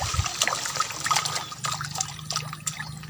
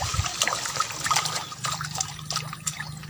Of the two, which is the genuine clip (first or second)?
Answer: first